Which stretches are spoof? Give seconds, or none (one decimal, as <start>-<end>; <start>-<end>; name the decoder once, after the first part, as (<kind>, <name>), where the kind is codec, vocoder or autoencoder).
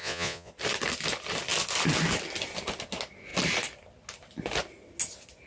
0.0-0.5 (vocoder, Vocos)